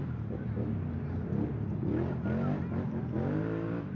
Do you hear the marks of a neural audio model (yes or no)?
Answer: no